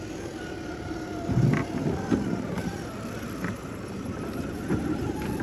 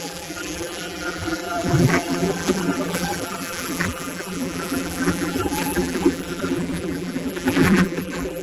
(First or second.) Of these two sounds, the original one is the first